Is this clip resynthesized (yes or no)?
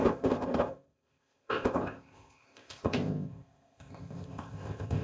yes